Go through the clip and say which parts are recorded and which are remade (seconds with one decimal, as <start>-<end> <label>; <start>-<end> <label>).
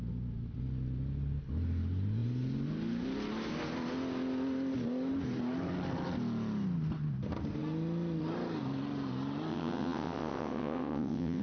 0.0-9.5 recorded; 9.5-11.4 remade